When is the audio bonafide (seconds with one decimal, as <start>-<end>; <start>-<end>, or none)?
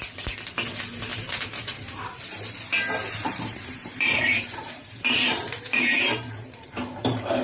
0.0-1.1; 2.5-3.0